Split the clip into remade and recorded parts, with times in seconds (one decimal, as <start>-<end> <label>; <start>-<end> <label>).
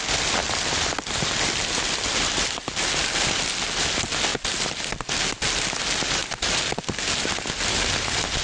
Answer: 0.0-4.3 recorded; 4.3-4.8 remade; 4.8-8.4 recorded